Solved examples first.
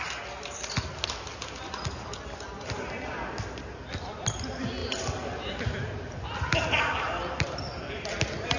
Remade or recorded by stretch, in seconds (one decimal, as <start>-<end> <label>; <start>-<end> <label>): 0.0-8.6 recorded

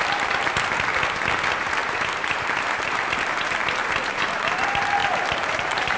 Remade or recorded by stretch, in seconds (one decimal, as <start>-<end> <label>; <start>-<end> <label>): 0.0-1.8 recorded; 1.8-3.0 remade; 3.0-5.0 recorded; 5.0-6.0 remade

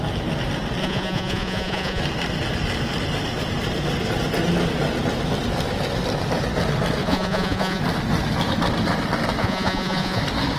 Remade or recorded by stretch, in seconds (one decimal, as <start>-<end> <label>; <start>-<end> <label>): 0.0-0.8 recorded; 0.8-2.0 remade; 2.0-7.0 recorded; 7.0-7.8 remade; 7.8-9.4 recorded; 9.4-10.2 remade; 10.2-10.6 recorded

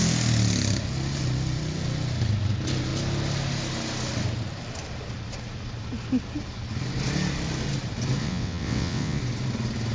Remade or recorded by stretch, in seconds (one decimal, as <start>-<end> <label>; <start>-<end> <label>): 0.0-8.2 recorded; 8.2-9.2 remade; 9.2-9.9 recorded

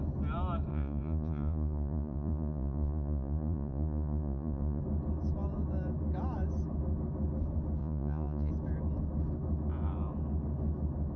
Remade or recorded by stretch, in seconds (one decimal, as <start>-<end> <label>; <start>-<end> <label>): 0.0-0.7 recorded; 0.7-4.8 remade; 4.8-7.8 recorded; 7.8-8.5 remade; 8.5-11.2 recorded

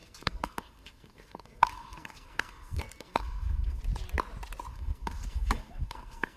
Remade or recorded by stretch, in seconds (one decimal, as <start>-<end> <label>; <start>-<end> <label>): 0.0-3.8 remade; 3.8-4.7 recorded; 4.7-6.4 remade